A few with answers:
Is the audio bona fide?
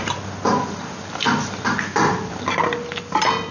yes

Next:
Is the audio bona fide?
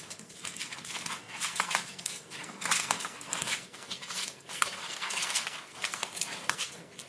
no